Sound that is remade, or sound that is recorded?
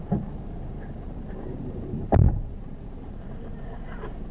remade